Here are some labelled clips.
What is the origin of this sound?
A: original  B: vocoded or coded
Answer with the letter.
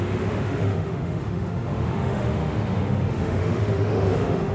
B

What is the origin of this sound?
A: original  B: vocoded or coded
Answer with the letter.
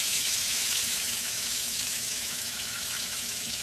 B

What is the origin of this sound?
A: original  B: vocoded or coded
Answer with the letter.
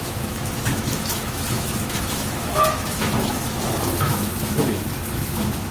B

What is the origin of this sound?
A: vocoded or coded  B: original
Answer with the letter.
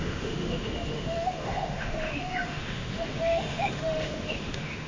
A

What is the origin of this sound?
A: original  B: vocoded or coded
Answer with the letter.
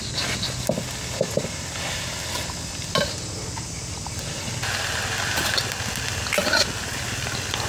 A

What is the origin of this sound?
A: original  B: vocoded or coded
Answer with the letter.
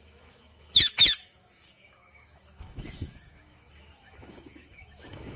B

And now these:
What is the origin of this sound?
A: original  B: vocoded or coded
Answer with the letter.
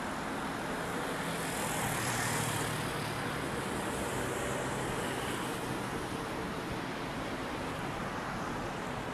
A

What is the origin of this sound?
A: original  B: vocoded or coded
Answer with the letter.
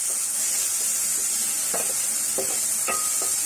A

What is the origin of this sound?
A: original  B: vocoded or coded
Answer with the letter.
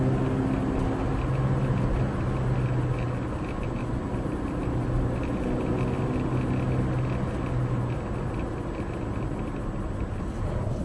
A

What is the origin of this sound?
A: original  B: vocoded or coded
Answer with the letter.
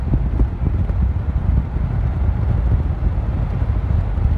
A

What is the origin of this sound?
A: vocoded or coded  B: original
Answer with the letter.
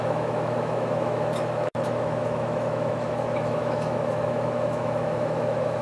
A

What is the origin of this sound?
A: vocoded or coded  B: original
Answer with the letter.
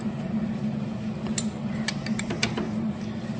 B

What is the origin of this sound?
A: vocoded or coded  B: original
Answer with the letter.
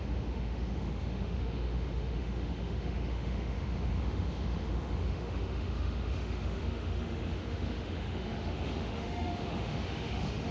A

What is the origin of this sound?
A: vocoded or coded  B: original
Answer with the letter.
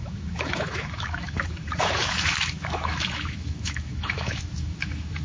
A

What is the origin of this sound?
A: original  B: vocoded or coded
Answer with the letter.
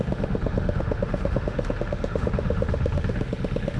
B